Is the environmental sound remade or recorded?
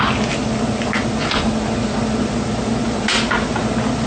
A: recorded